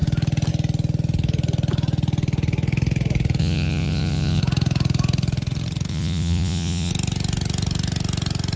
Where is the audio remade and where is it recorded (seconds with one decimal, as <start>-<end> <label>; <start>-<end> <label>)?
0.0-3.4 recorded; 3.4-4.4 remade; 4.4-5.9 recorded; 5.9-6.9 remade; 6.9-8.6 recorded